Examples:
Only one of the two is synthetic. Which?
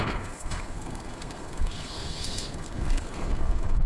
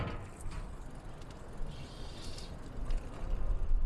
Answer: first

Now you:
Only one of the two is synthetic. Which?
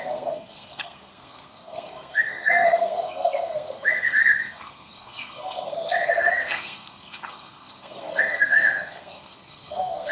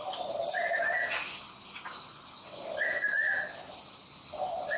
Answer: first